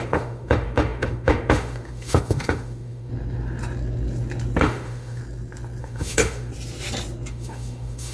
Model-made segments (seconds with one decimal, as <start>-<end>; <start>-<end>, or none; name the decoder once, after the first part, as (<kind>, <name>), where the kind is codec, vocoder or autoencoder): 0.0-3.1 (autoencoder, DAC-VAE); 4.6-5.2; 5.8-6.5; 7.3-8.1